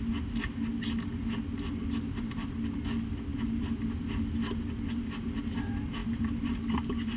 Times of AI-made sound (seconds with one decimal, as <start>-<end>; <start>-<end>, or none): 6.0-6.6